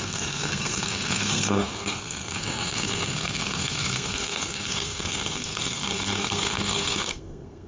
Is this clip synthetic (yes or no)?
yes